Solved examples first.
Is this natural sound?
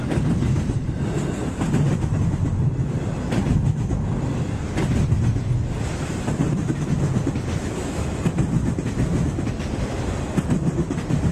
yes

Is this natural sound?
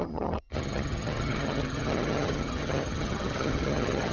no